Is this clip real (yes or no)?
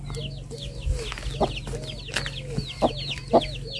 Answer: yes